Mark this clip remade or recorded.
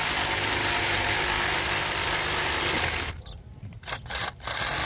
recorded